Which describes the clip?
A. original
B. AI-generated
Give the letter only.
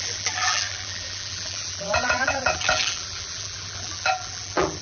B